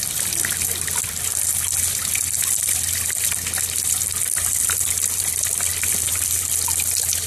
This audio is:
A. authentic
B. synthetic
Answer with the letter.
A